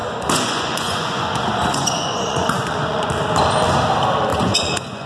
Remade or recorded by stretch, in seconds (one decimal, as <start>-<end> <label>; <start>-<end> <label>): 0.0-3.1 remade; 3.1-4.3 recorded; 4.3-5.1 remade